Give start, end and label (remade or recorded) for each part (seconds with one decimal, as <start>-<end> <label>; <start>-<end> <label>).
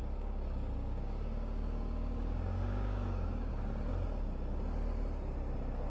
0.0-3.5 remade; 3.5-5.9 recorded